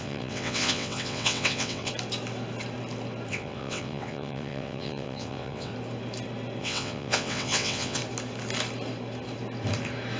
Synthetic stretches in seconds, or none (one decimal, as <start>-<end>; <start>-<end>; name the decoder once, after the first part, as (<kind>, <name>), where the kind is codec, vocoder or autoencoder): 0.0-1.9 (vocoder, WaveNeXt); 3.3-5.7; 6.6-8.0